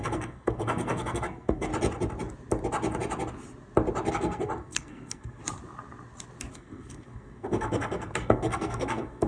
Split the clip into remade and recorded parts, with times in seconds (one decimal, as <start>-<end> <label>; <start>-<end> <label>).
0.0-1.7 remade; 1.7-4.1 recorded; 4.1-5.4 remade; 5.4-6.5 recorded; 6.5-9.3 remade